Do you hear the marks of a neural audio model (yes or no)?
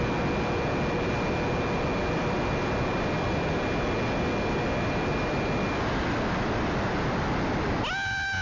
no